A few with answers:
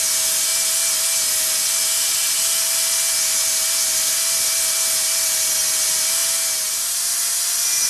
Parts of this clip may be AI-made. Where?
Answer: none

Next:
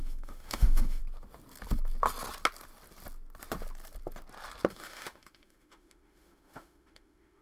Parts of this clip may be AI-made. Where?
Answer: 0.0-1.0 (autoencoder, DAC-VAE); 4.7-7.4

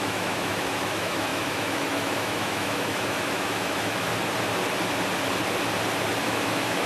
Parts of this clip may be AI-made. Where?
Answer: 0.0-4.1 (autoencoder, DAC-VAE); 6.2-6.9

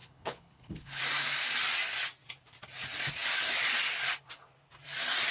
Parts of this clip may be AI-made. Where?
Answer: 0.0-1.0 (codec, HILCodec)

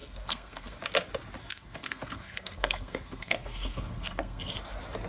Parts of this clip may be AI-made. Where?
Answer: 0.0-0.8 (codec, SNAC); 1.4-4.5